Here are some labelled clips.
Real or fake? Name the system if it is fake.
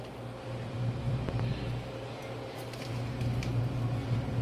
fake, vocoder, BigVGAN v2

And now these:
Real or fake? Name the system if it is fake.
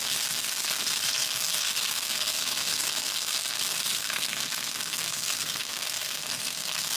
fake, codec, SNAC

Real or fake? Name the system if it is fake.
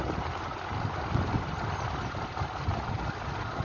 real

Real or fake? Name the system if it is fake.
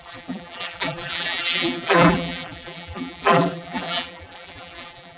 fake, vocoder, BigVGAN v2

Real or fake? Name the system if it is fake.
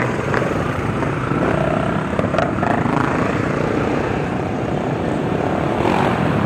fake, vocoder, BigVGAN v2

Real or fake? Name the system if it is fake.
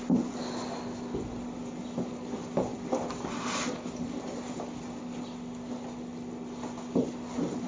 real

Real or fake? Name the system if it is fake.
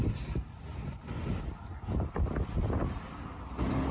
real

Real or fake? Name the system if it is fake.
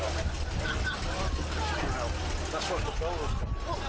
real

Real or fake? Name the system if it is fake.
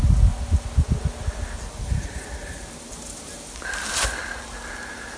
real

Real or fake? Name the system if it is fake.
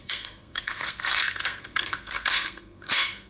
fake, codec, SNAC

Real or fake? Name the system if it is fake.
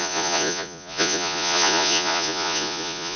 fake, vocoder, Vocos